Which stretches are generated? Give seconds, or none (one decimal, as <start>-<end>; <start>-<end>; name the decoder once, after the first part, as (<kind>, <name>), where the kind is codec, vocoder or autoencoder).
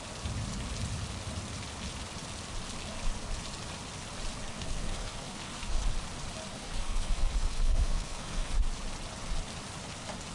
4.5-5.8 (codec, SNAC); 6.5-8.5